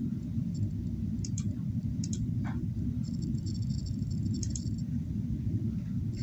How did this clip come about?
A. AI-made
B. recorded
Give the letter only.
A